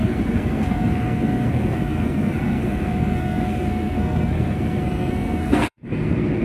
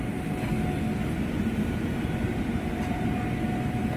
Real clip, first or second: second